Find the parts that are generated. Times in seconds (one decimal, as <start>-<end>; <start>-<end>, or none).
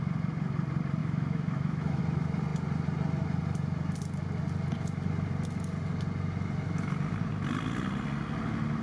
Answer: 1.0-2.0